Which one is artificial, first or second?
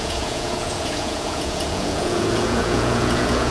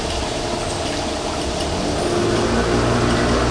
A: first